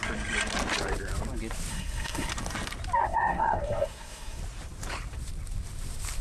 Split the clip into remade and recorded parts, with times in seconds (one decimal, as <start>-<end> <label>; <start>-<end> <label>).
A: 0.0-1.7 recorded; 1.7-2.3 remade; 2.3-3.0 recorded; 3.0-4.4 remade; 4.4-6.2 recorded